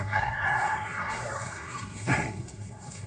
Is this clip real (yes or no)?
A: no